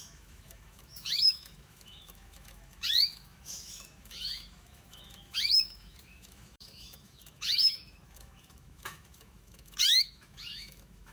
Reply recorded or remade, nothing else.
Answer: remade